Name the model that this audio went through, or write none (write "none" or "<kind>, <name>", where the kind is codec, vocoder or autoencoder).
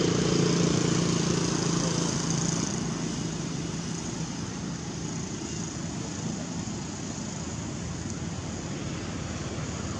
none